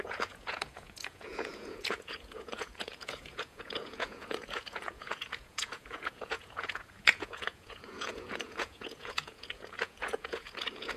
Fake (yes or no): yes